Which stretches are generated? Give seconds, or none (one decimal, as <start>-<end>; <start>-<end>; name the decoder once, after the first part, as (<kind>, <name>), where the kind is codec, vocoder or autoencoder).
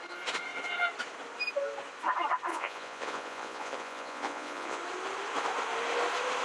2.5-4.8 (vocoder, Vocos)